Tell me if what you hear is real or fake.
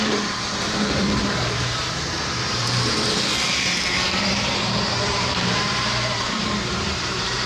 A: fake